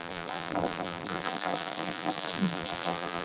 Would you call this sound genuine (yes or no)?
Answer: no